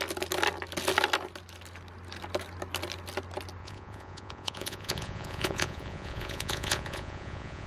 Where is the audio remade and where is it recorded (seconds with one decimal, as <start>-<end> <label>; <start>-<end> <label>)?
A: 0.0-3.6 recorded; 3.6-7.7 remade